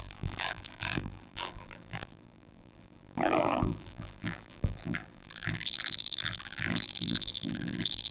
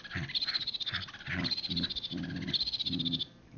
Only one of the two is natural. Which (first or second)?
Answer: second